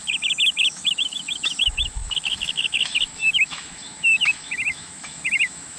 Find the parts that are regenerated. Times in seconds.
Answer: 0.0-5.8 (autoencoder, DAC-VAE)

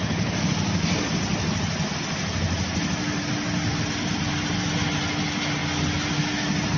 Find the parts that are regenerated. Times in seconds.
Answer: none

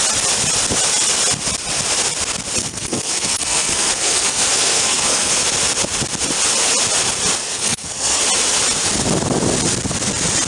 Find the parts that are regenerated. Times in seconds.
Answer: 2.6-5.3 (codec, SNAC); 7.4-8.2

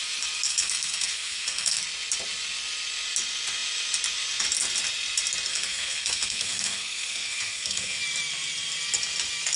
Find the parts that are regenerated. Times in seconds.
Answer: 0.5-1.8 (codec, SNAC); 5.5-8.0

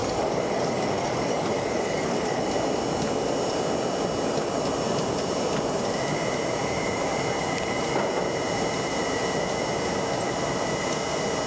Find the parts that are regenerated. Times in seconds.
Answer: 0.0-2.5 (codec, DAC)